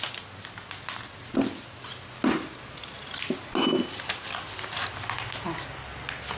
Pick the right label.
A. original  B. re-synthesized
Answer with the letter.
A